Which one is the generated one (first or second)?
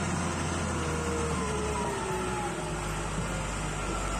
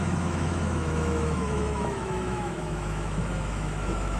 second